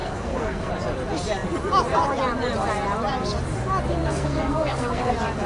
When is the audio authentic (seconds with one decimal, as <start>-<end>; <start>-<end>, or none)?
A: 0.7-4.0; 5.1-5.5